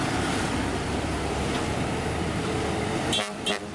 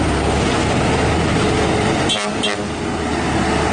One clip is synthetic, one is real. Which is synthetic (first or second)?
first